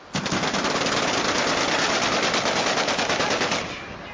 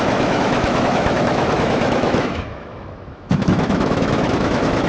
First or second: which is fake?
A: second